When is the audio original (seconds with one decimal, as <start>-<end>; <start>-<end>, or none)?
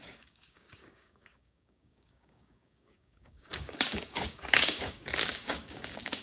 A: none